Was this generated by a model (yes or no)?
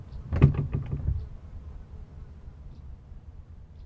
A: no